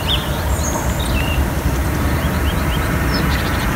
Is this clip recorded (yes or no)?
no